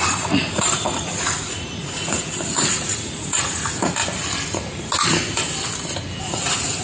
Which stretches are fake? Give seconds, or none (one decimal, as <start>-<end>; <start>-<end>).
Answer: 0.0-4.0; 6.2-6.8